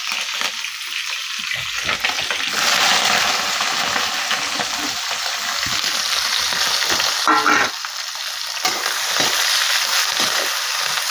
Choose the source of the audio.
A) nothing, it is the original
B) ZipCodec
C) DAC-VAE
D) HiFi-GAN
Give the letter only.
A